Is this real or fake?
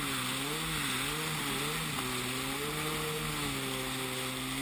real